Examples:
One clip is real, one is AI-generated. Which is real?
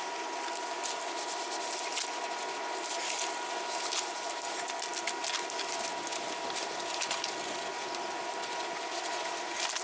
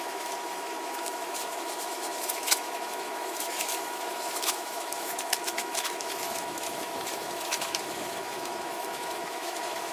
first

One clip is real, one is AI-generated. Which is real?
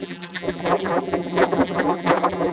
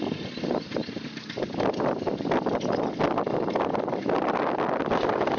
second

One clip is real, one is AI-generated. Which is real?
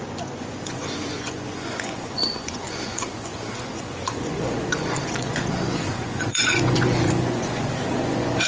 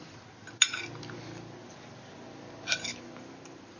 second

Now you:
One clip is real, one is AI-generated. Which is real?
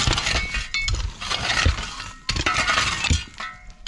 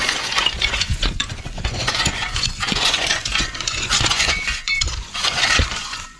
first